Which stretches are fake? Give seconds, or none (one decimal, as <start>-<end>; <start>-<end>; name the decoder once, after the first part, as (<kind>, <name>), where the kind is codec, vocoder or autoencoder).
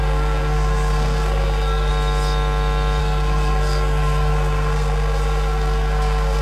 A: 0.0-1.9 (codec, SNAC); 3.0-6.4